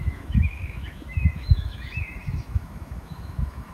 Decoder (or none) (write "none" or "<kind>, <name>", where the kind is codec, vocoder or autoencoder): autoencoder, DAC-VAE